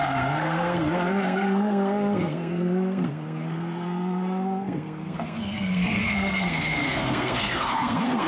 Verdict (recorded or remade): remade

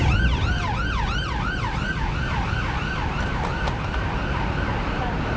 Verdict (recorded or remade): recorded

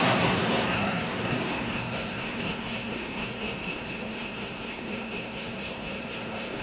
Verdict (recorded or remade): remade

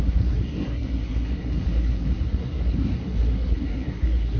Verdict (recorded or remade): remade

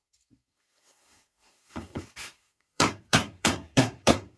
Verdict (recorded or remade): remade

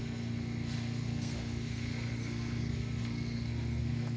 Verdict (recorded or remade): remade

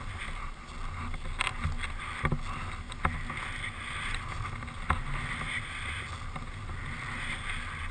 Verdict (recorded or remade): recorded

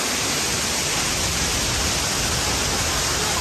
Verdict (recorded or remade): recorded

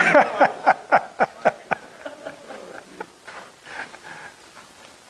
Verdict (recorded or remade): recorded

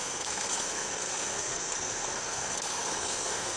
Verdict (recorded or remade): remade